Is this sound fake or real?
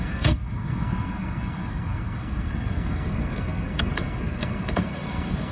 fake